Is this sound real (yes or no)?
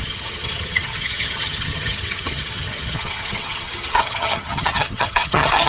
no